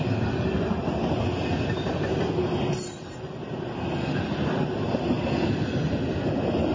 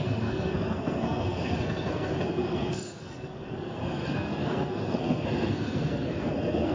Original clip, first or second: first